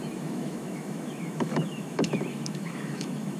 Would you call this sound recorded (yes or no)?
no